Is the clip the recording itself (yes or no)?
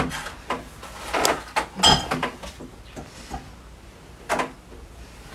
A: yes